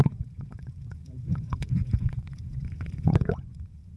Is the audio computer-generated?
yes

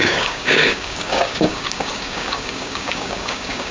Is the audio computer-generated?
yes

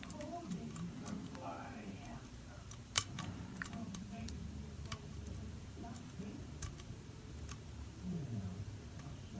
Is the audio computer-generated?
yes